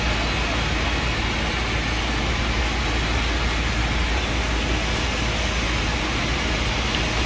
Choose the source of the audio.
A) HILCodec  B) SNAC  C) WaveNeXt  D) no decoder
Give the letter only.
D